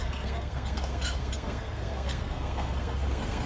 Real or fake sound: fake